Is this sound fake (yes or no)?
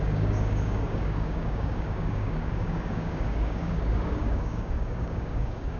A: yes